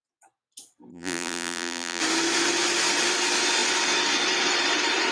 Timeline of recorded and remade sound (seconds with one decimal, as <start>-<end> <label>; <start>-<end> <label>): 0.0-0.9 recorded; 0.9-2.0 remade; 2.0-5.1 recorded